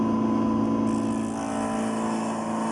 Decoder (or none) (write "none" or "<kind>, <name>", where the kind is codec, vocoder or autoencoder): none